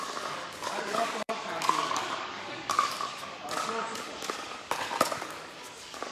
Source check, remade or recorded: remade